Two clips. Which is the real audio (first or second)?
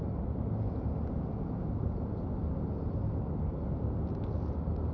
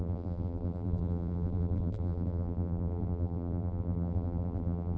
first